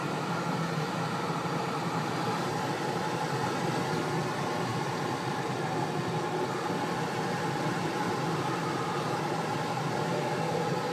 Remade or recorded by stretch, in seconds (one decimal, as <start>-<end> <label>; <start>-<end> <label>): 0.0-1.6 recorded; 1.6-2.6 remade; 2.6-10.9 recorded